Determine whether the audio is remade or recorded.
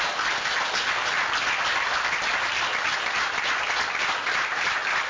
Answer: recorded